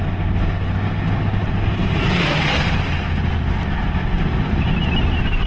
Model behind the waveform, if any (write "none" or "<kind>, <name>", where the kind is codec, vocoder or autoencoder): none